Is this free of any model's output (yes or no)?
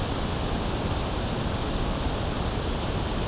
yes